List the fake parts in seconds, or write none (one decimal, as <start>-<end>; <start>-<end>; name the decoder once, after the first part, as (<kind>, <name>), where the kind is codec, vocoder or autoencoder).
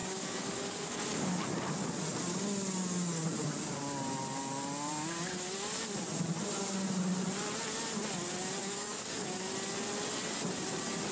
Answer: 0.0-1.0 (codec, DAC); 8.6-9.5